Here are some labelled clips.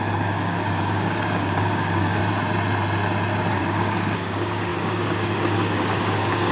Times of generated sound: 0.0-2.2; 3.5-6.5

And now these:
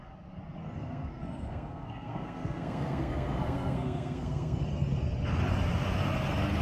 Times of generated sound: 0.6-4.6

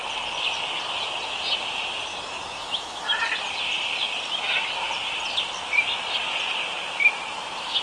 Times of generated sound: 2.1-3.0

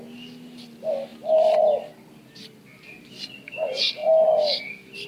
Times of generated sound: none

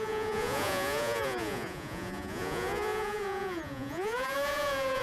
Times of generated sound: 0.0-5.0